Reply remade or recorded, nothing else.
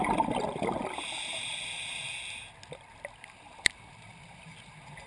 recorded